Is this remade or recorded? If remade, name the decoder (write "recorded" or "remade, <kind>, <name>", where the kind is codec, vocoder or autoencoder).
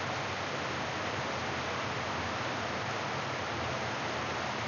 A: recorded